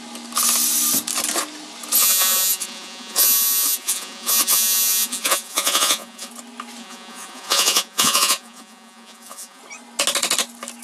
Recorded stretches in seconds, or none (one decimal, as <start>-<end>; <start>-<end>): 0.0-2.0; 6.3-6.8; 9.6-10.8